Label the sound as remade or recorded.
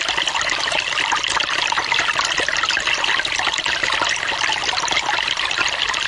recorded